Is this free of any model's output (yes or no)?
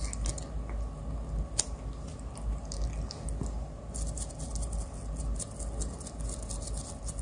yes